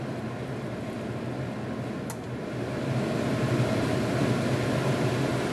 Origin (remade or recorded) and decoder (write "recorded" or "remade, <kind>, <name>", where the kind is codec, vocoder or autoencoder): recorded